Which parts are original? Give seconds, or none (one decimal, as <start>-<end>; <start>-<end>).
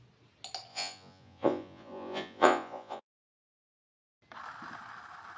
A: 0.0-0.7; 3.9-5.4